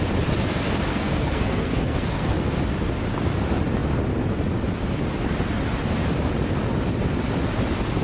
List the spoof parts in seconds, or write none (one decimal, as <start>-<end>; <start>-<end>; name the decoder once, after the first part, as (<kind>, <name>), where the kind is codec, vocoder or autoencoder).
0.9-2.5 (codec, SNAC)